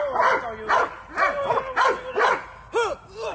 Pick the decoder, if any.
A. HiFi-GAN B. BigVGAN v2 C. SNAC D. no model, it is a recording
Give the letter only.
D